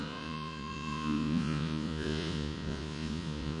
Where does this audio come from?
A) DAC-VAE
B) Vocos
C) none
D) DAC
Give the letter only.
B